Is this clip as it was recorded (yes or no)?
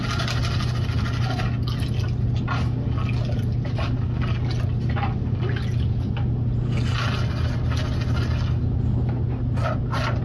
yes